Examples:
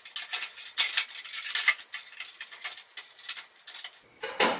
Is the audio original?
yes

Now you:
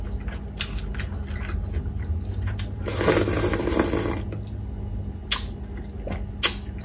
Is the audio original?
yes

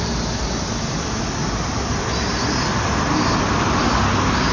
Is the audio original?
yes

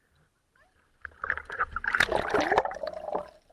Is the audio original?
yes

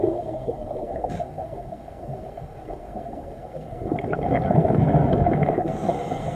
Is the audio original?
no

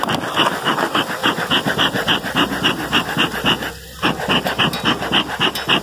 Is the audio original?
yes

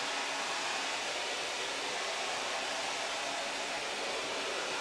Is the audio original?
yes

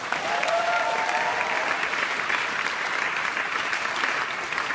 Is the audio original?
yes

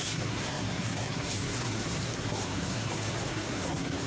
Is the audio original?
no